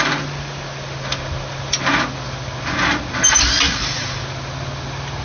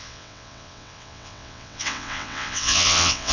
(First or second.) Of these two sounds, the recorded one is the first